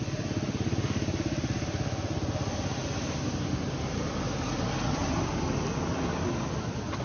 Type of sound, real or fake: real